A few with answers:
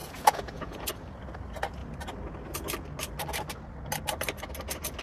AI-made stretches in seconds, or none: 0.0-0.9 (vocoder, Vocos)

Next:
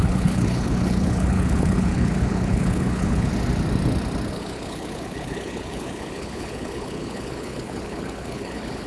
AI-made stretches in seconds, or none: 0.0-3.3 (codec, HILCodec); 4.3-8.9

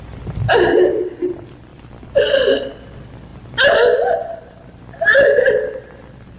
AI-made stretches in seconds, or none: 1.7-2.7 (vocoder, BigVGAN v2)

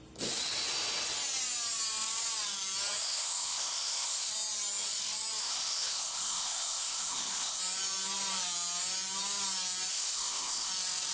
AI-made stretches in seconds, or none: 3.0-4.3 (codec, ZipCodec); 5.4-7.6; 9.9-10.7

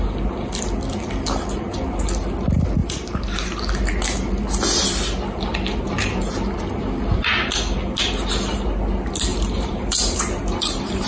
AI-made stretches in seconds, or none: 2.8-3.6 (vocoder, BigVGAN v2); 5.7-6.3; 9.3-11.1

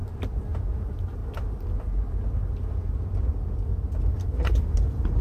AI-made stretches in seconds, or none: 0.6-1.2 (vocoder, BigVGAN v2); 4.1-5.2

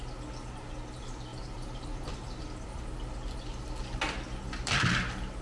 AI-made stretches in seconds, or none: 1.3-3.6 (vocoder, BigVGAN v2)

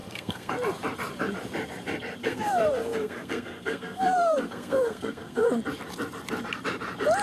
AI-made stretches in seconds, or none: 0.0-0.5 (codec, SNAC); 2.2-5.5